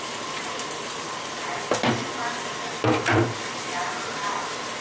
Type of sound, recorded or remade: recorded